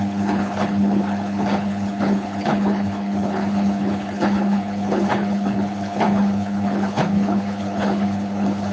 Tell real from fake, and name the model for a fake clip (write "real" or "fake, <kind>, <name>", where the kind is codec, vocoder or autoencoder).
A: fake, codec, HILCodec